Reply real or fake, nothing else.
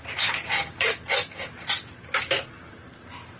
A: real